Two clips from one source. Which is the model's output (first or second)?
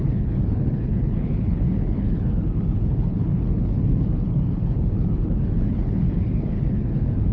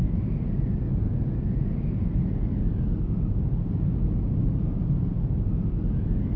first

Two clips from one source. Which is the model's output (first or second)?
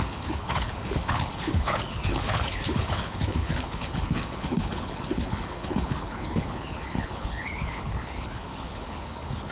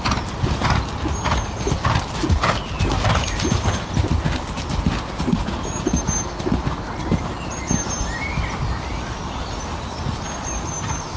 first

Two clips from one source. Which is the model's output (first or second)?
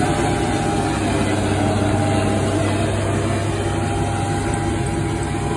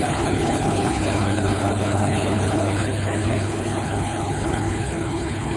second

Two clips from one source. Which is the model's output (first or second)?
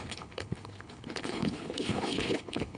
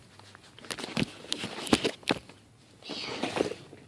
first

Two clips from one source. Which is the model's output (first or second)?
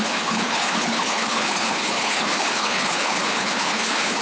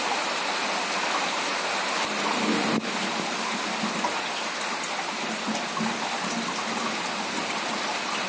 first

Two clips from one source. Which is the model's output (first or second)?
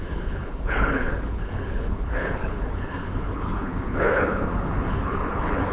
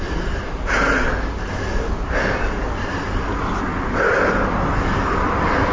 first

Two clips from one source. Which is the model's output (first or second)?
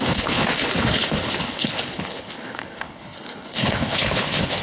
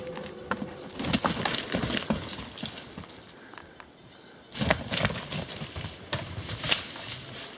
first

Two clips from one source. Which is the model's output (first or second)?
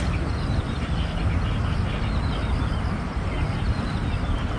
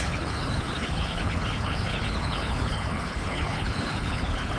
second